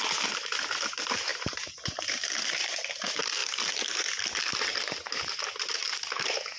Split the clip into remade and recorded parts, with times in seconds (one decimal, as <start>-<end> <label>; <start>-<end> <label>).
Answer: 0.0-3.4 remade; 3.4-5.4 recorded; 5.4-6.6 remade